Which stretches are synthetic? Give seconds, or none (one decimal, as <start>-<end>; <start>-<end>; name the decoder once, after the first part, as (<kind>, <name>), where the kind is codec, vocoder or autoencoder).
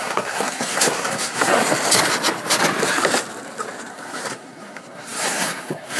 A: 0.0-1.5 (codec, SNAC); 3.9-6.0